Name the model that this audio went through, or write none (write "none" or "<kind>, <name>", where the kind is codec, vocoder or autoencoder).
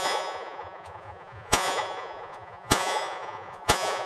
vocoder, Vocos